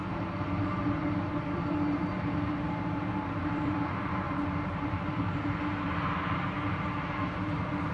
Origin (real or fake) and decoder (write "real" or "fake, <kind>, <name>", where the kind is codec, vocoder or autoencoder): fake, vocoder, BigVGAN v2